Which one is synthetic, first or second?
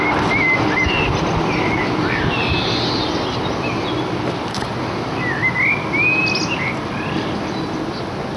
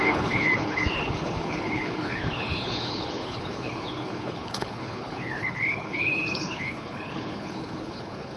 second